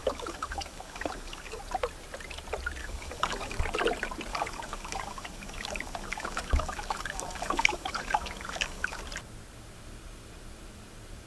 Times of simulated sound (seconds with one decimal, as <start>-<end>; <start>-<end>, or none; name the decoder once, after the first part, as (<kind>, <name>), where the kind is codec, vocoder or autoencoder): 0.0-1.6 (codec, DAC); 2.8-3.6; 4.3-9.0